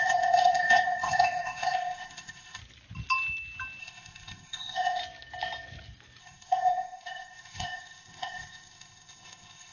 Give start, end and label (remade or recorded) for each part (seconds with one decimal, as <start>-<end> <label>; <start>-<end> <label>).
0.0-2.6 remade; 2.6-3.8 recorded; 3.8-5.0 remade; 5.0-6.2 recorded; 6.2-9.7 remade